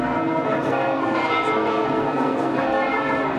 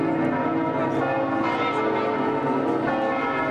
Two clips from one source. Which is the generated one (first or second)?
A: first